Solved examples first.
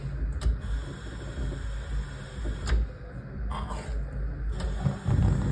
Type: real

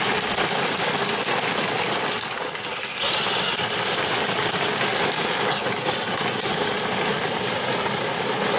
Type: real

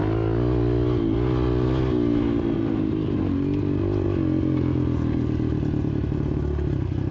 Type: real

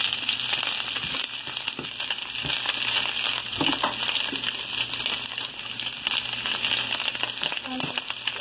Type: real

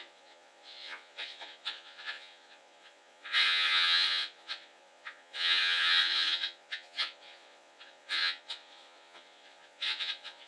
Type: fake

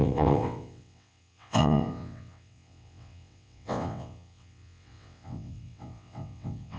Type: fake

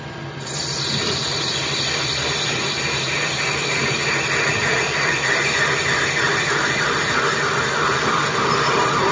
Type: fake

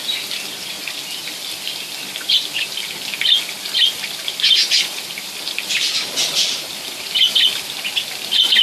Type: real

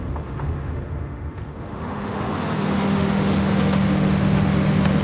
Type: fake